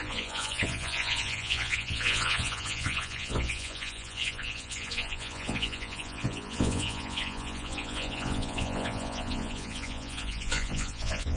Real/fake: fake